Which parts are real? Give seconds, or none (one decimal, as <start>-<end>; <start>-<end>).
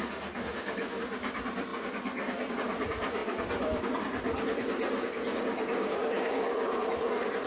1.7-2.5